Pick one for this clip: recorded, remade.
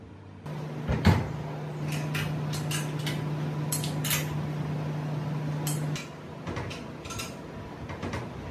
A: recorded